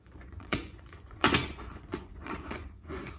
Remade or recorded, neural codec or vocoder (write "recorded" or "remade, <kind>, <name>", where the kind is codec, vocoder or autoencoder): remade, vocoder, Vocos